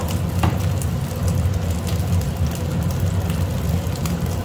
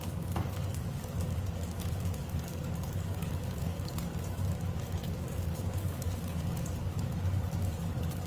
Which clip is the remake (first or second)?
second